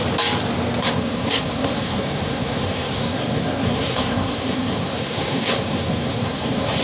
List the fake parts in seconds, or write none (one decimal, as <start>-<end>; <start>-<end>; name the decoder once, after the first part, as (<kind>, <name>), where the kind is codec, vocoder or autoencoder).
0.8-6.8 (codec, SNAC)